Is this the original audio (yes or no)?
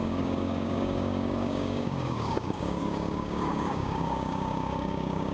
no